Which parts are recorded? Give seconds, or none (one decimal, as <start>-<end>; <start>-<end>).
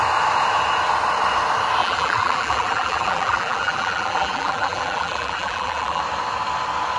0.0-1.8; 6.0-7.0